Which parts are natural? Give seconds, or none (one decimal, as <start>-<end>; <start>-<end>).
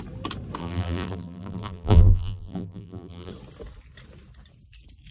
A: 0.0-0.6; 3.3-5.1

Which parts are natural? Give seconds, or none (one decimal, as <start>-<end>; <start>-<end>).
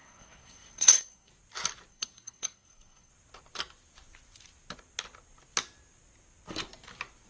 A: 1.3-1.9; 3.1-7.3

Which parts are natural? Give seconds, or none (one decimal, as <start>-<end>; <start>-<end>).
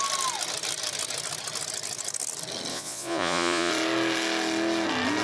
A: 0.0-2.7; 3.7-5.2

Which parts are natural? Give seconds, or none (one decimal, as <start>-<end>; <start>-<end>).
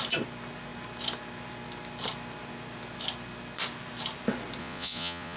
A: 0.0-4.6